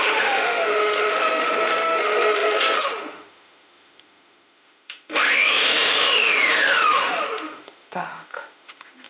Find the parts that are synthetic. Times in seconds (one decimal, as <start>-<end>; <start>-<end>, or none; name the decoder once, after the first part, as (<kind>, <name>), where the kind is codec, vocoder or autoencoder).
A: 0.0-9.1 (autoencoder, DAC-VAE)